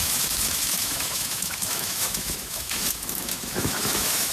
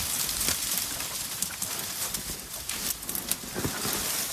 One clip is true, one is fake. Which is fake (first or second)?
first